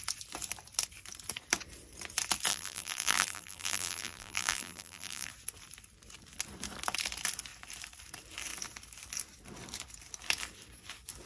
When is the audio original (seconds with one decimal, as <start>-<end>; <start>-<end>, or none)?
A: 0.0-2.5; 5.3-11.3